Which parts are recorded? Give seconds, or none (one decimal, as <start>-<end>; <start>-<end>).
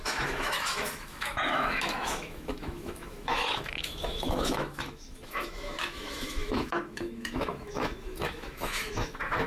none